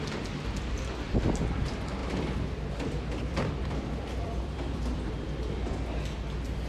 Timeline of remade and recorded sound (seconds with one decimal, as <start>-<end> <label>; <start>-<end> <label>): 0.0-2.0 recorded; 2.0-5.1 remade; 5.1-6.7 recorded